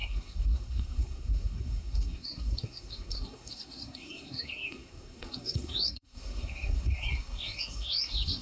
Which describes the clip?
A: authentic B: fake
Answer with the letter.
B